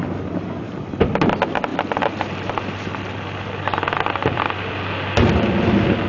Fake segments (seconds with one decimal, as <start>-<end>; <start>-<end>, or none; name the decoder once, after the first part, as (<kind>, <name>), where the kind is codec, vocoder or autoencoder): none